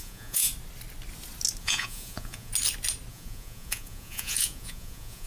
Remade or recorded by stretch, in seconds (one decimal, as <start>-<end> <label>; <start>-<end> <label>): 0.0-0.5 remade; 0.5-1.6 recorded; 1.6-2.5 remade; 2.5-3.1 recorded; 3.1-5.3 remade